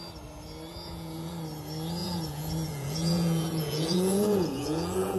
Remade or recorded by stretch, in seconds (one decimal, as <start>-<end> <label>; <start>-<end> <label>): 0.0-0.7 recorded; 0.7-1.3 remade; 1.3-2.0 recorded; 2.0-5.2 remade